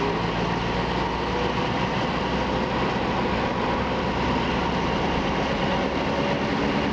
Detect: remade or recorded recorded